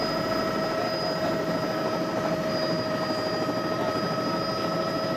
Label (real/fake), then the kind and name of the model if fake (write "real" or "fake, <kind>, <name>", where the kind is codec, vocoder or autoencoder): real